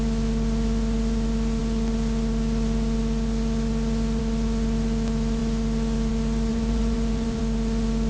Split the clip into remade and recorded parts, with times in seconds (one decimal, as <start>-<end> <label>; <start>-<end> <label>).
0.0-6.5 recorded; 6.5-7.4 remade; 7.4-8.1 recorded